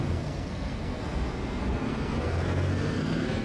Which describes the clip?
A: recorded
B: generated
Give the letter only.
B